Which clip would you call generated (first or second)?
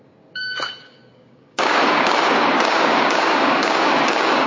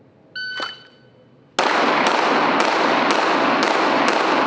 first